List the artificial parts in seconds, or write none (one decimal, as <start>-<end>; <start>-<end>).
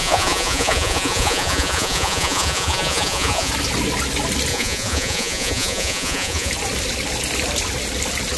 0.0-3.5; 4.5-6.5